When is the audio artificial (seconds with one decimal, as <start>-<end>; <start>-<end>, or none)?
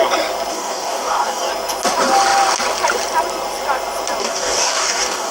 0.5-1.5; 4.2-5.3